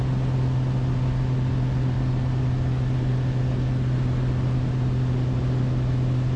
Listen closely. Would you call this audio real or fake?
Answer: real